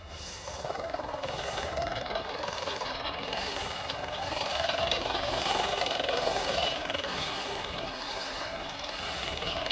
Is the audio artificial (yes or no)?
yes